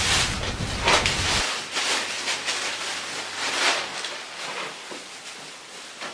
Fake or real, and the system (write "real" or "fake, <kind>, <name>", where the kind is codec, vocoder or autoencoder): real